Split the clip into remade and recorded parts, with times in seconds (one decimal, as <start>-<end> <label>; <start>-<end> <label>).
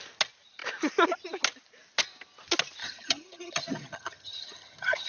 0.0-2.8 recorded; 2.8-5.1 remade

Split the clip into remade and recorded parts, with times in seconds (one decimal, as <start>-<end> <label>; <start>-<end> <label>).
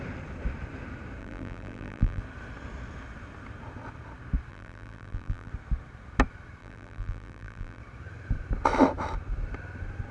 0.0-1.2 recorded; 1.2-2.2 remade; 2.2-4.5 recorded; 4.5-5.5 remade; 5.5-6.6 recorded; 6.6-7.8 remade; 7.8-10.1 recorded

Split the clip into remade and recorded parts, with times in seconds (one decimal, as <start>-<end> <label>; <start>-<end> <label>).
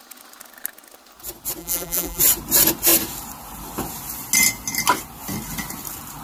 0.0-1.6 recorded; 1.6-2.2 remade; 2.2-6.2 recorded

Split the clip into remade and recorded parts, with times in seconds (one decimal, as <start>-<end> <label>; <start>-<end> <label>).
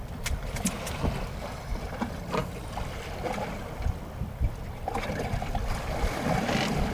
0.0-6.9 recorded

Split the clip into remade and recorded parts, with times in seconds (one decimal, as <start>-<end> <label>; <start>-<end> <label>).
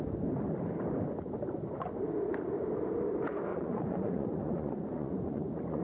0.0-3.5 recorded; 3.5-5.8 remade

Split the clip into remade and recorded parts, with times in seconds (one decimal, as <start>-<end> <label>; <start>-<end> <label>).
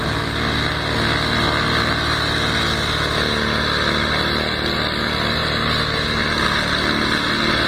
0.0-7.7 recorded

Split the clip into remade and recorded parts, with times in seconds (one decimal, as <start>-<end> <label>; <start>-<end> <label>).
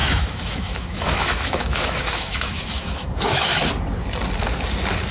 0.0-3.5 remade; 3.5-5.1 recorded